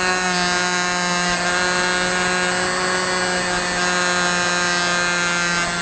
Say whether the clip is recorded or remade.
recorded